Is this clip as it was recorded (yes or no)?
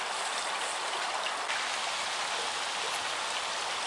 yes